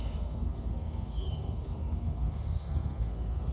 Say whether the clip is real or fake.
fake